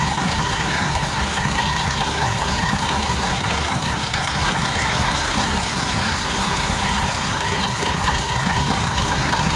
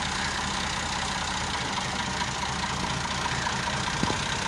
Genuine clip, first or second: second